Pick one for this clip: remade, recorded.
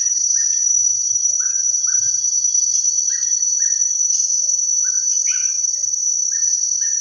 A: recorded